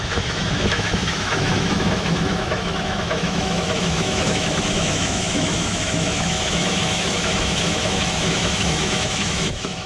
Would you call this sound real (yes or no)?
no